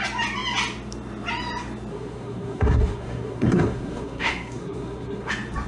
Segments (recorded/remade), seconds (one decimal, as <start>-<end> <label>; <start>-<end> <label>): 0.0-1.9 recorded; 1.9-5.3 remade; 5.3-5.7 recorded